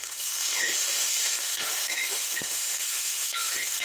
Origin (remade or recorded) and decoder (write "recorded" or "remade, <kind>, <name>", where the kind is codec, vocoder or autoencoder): remade, autoencoder, DAC-VAE